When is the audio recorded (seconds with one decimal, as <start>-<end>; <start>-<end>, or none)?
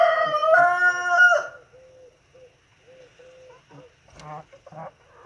0.0-5.3